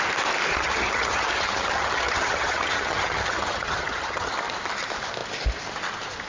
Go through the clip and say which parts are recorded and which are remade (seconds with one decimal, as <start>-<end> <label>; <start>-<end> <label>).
0.0-0.5 recorded; 0.5-4.3 remade; 4.3-6.3 recorded